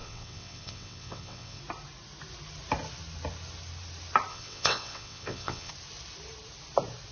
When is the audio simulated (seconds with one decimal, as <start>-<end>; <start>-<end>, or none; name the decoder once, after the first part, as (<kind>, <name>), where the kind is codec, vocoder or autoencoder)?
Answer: 0.0-1.6 (vocoder, WaveNeXt); 4.3-5.7

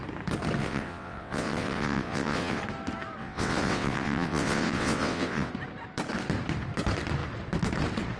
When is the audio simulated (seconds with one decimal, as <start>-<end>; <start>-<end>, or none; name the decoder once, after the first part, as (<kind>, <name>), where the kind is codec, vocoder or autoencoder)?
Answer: 0.6-2.6 (vocoder, WaveNeXt); 3.2-5.5

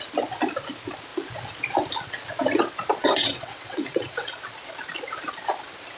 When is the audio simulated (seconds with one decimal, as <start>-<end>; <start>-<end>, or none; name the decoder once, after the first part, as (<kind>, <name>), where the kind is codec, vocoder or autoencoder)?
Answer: 3.0-4.3 (vocoder, WaveNeXt)

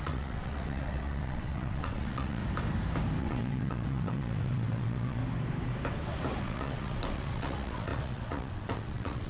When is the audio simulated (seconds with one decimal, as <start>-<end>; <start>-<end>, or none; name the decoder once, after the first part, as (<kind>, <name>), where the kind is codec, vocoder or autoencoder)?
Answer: 0.0-2.4 (vocoder, WaveNeXt); 3.2-5.2; 6.4-9.3

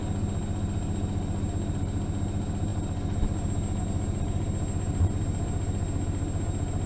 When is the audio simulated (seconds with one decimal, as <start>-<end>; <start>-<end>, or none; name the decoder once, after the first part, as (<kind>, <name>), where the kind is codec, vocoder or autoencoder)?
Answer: none